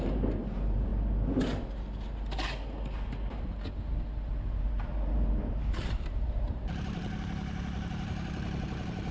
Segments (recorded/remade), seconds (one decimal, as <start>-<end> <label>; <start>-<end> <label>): 0.0-0.9 remade; 0.9-4.6 recorded; 4.6-9.1 remade